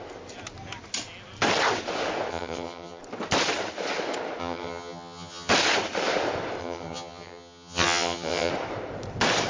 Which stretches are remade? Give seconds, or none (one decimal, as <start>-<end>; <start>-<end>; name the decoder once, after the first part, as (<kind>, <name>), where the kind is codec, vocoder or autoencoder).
2.3-3.0 (vocoder, HiFi-GAN); 4.4-5.5; 6.6-8.5